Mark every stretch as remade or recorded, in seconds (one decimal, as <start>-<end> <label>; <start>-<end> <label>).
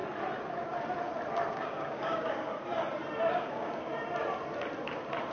0.0-1.5 recorded; 1.5-2.5 remade; 2.5-3.3 recorded; 3.3-3.9 remade; 3.9-5.3 recorded